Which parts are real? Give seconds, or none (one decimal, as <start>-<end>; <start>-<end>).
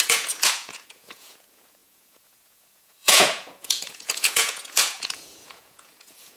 none